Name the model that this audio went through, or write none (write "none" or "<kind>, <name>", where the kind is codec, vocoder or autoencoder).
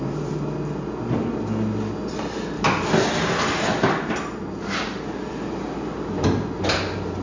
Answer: none